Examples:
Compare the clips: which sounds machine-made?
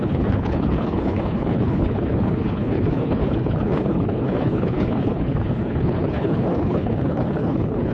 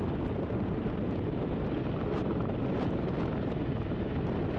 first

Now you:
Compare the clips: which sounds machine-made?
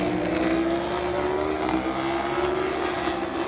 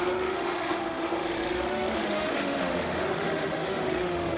second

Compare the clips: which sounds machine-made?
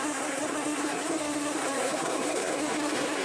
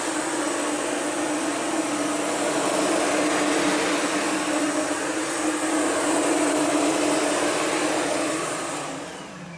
first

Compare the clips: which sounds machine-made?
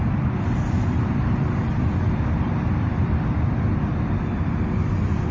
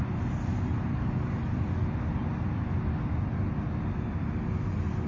first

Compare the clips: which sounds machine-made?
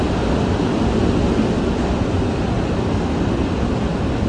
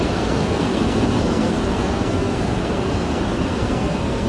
second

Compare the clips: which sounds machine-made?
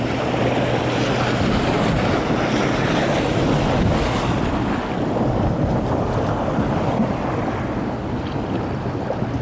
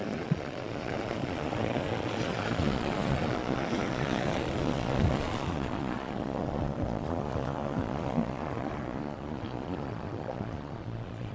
second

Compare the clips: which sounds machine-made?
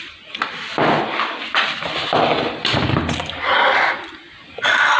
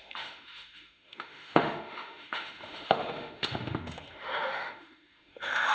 second